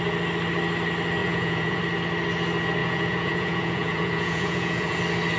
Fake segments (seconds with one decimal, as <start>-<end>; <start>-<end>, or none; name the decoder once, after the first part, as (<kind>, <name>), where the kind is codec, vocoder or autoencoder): 1.2-1.8 (vocoder, Vocos); 2.8-5.0